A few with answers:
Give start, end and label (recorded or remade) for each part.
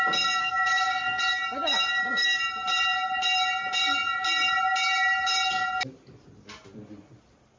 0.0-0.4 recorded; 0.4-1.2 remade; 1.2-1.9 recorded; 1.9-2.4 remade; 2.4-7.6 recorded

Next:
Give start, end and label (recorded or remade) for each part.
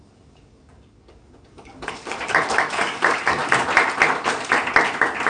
0.0-3.4 remade; 3.4-5.3 recorded